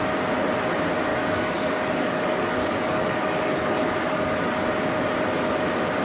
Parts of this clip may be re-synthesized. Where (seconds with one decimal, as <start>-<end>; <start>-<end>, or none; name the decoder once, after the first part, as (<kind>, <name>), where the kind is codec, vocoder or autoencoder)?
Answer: 1.1-4.7 (codec, DAC)